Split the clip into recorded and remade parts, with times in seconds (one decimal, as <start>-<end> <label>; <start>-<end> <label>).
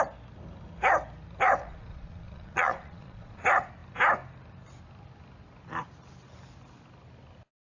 0.0-1.6 recorded; 1.6-3.4 remade; 3.4-7.6 recorded